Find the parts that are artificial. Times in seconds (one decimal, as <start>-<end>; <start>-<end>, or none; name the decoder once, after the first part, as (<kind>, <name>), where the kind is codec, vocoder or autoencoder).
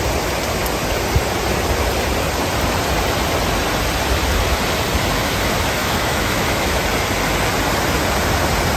5.8-6.8 (autoencoder, DAC-VAE)